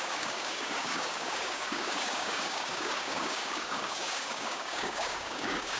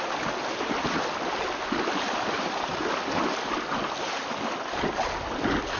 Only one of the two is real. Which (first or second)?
second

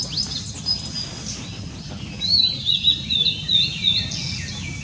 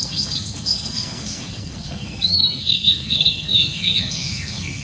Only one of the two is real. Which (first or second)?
first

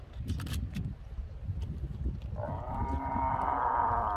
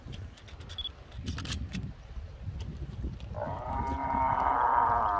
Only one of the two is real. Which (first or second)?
second